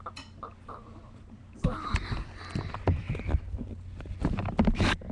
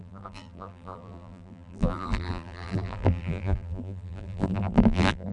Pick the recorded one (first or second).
first